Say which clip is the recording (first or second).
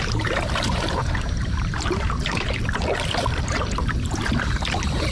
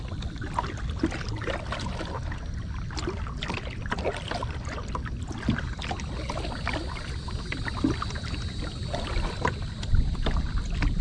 second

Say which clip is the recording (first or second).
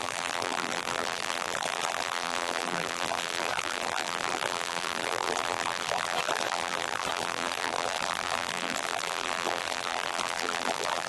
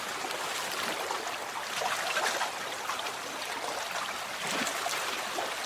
second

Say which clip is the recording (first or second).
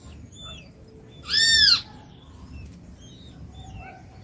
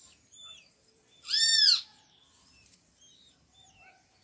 first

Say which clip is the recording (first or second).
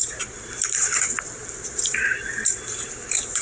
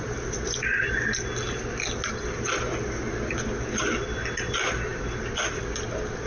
second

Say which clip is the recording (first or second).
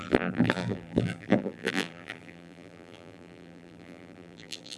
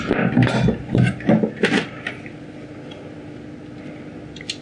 second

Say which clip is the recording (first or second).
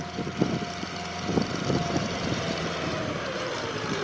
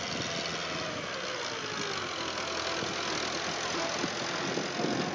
second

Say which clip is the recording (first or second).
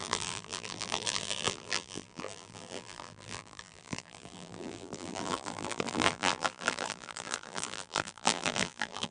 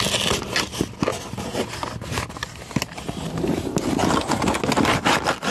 second